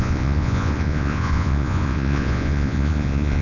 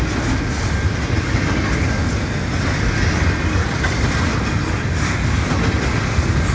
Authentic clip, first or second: second